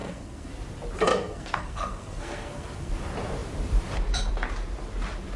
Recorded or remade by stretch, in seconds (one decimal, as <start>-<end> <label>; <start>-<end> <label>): 0.0-0.5 remade; 0.5-1.1 recorded; 1.1-2.9 remade; 2.9-5.4 recorded